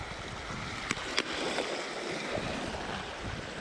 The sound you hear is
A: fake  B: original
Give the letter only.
B